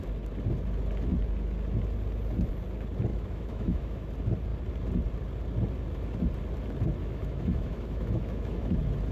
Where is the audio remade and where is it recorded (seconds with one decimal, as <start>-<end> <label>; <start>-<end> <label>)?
0.0-3.1 recorded; 3.1-4.1 remade; 4.1-7.0 recorded; 7.0-8.7 remade; 8.7-9.1 recorded